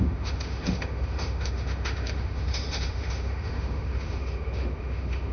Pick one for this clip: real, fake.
fake